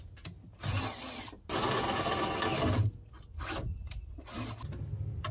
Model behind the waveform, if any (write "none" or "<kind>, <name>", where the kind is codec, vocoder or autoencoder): none